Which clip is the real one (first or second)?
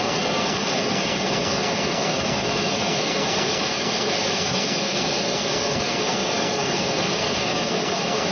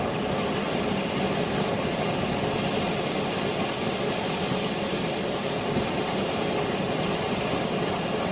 second